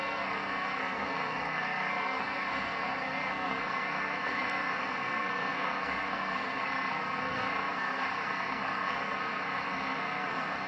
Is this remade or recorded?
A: remade